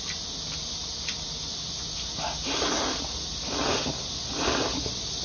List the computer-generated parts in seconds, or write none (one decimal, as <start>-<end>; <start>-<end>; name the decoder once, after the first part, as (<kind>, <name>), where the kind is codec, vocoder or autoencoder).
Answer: none